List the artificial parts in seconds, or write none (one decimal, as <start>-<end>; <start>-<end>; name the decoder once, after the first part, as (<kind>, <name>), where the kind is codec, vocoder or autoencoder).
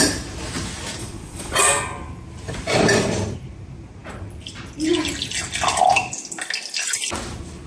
1.0-1.6 (vocoder, Vocos)